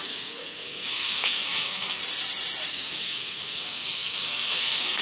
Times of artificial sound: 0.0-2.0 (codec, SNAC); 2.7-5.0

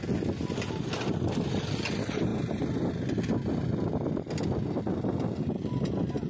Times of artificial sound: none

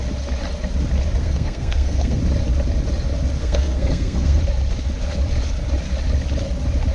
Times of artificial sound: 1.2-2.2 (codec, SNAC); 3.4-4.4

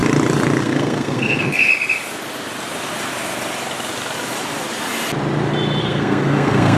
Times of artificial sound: 0.6-1.7 (codec, SNAC); 5.8-6.8

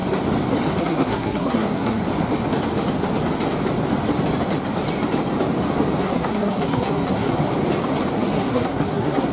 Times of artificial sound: 0.8-2.0 (codec, SNAC); 6.0-7.5; 8.1-9.3

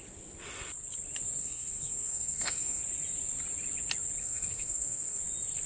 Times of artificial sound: 1.4-2.8 (codec, SNAC); 4.2-5.2

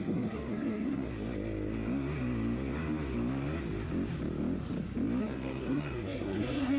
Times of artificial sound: 0.0-1.1 (codec, SNAC); 5.2-6.8

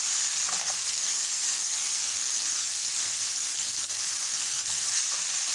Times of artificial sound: 0.6-3.9 (codec, SNAC); 4.3-5.0